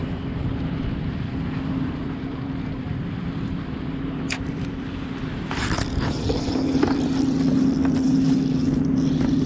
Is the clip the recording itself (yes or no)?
no